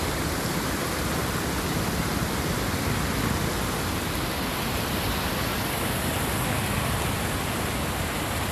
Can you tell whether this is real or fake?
real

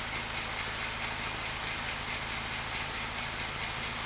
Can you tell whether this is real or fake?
real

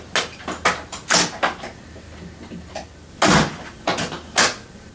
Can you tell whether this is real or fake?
real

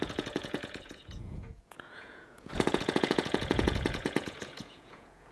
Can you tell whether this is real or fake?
fake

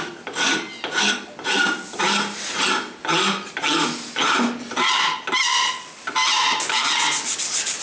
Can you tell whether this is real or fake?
real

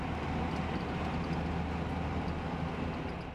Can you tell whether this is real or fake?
real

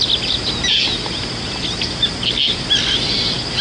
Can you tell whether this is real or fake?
real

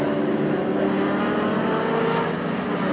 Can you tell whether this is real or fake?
real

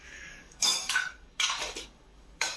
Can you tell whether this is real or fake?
fake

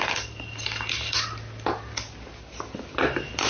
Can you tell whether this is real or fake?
real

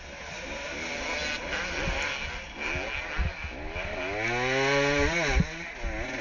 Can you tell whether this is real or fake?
real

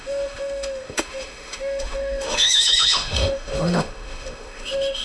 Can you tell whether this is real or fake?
fake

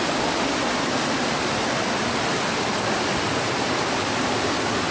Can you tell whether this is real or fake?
real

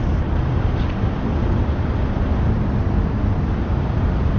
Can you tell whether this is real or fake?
real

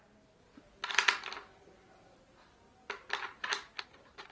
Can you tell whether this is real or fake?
real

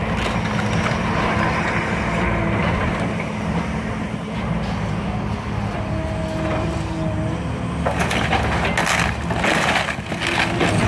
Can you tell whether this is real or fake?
real